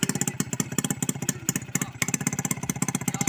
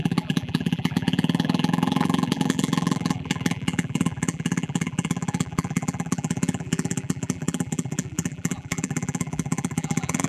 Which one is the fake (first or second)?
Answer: second